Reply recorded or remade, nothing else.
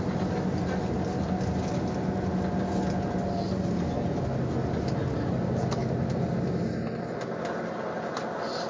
recorded